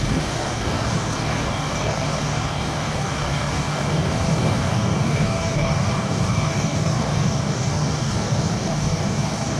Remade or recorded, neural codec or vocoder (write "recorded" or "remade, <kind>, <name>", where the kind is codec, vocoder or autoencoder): remade, codec, DAC